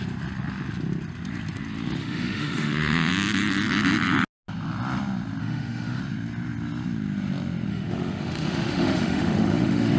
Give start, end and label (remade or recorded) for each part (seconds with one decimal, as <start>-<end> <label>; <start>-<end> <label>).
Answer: 0.0-2.0 recorded; 2.0-3.1 remade; 3.1-5.4 recorded; 5.4-6.0 remade; 6.0-7.7 recorded; 7.7-10.0 remade